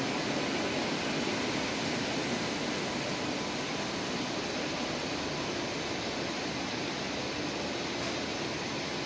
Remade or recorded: recorded